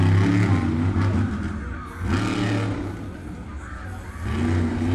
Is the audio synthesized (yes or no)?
no